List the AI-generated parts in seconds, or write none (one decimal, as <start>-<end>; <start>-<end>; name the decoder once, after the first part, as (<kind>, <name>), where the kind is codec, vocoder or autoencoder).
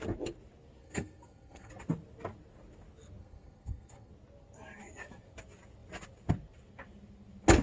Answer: 0.8-1.7 (codec, SNAC); 3.2-4.1